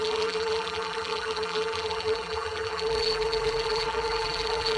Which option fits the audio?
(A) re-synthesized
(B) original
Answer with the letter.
A